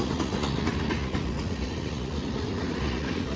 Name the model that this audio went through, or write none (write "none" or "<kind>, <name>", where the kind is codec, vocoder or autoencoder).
vocoder, Vocos